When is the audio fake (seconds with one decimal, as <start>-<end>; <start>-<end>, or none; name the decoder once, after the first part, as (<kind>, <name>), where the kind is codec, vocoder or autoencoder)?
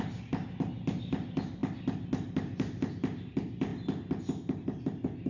none